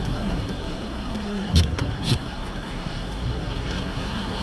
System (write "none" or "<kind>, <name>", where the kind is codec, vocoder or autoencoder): codec, SNAC